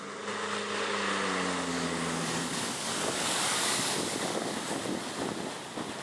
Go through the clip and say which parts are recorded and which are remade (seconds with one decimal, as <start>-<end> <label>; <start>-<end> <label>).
0.0-1.7 recorded; 1.7-4.8 remade; 4.8-6.0 recorded